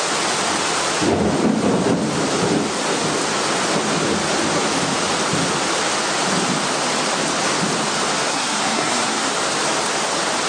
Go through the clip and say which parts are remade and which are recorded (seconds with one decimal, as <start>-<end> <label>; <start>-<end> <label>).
0.0-8.3 recorded; 8.3-9.3 remade; 9.3-10.5 recorded